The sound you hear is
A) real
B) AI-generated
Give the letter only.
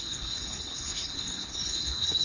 B